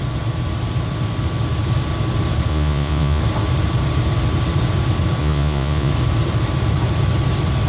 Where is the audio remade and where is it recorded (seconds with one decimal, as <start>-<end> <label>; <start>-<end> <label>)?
0.0-2.5 recorded; 2.5-3.2 remade; 3.2-5.2 recorded; 5.2-5.9 remade; 5.9-7.7 recorded